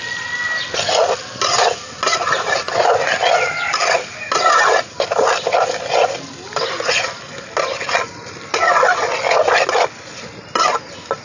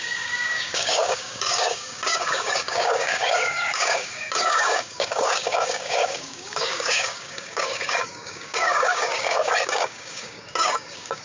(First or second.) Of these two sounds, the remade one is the second